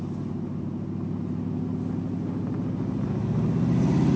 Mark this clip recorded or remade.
recorded